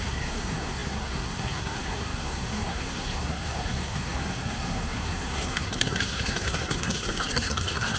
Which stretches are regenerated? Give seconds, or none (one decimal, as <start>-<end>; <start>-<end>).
0.0-8.0